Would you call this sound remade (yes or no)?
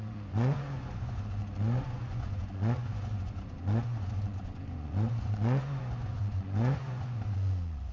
yes